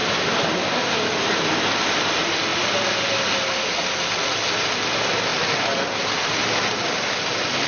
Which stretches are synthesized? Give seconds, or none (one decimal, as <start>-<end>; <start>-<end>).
0.0-1.2; 2.5-3.1